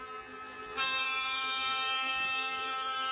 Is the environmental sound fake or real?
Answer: fake